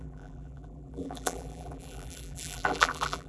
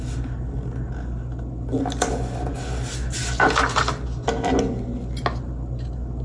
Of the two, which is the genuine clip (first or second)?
second